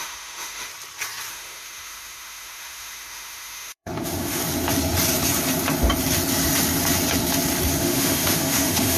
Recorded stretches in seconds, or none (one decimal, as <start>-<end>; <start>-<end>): 0.7-1.3; 4.4-7.8